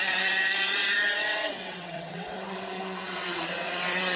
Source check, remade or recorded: remade